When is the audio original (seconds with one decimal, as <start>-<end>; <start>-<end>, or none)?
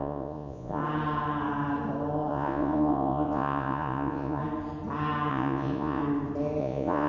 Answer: 0.8-2.3; 4.4-5.3; 6.0-6.6